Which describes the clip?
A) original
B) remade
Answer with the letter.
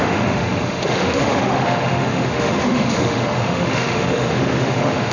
B